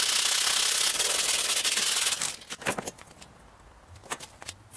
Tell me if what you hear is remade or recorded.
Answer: recorded